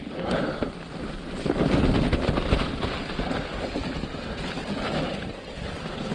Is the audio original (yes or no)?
yes